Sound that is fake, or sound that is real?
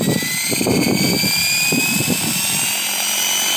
real